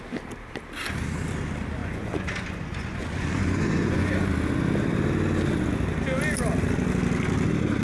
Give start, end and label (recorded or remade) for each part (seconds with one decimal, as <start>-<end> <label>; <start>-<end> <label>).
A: 0.0-1.8 recorded; 1.8-4.3 remade; 4.3-7.8 recorded